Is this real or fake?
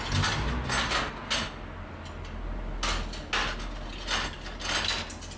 real